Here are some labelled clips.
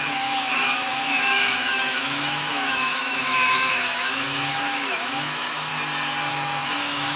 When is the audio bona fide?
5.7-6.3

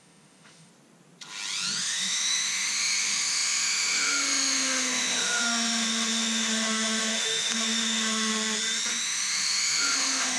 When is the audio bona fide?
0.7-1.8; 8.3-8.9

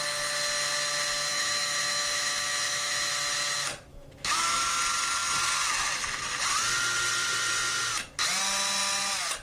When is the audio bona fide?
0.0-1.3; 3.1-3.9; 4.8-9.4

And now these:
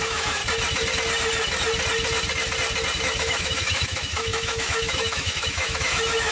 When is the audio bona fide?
0.4-3.0